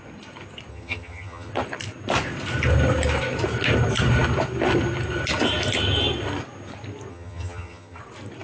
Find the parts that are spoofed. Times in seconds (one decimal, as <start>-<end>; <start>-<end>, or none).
0.7-1.5; 7.1-8.0